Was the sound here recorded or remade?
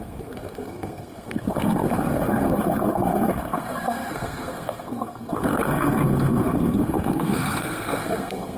remade